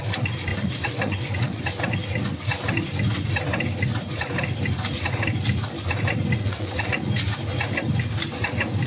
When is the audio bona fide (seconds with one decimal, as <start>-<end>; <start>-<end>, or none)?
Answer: 0.0-0.5; 1.6-6.4; 6.9-8.9